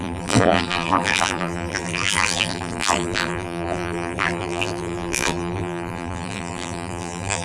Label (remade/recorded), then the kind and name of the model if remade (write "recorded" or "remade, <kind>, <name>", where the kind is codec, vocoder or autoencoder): remade, vocoder, BigVGAN v2